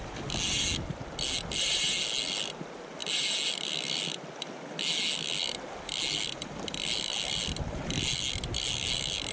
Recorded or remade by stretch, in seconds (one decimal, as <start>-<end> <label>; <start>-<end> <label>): 0.0-9.3 recorded